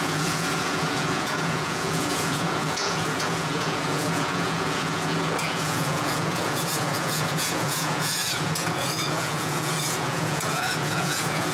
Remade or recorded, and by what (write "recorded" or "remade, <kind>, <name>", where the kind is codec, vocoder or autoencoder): remade, vocoder, Vocos